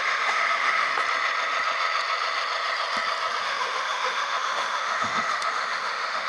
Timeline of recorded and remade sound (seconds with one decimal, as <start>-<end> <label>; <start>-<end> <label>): 0.0-0.9 remade; 0.9-3.4 recorded; 3.4-6.3 remade